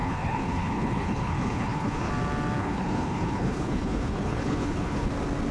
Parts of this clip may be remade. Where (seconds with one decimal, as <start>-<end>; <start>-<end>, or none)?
0.0-2.1; 2.6-5.1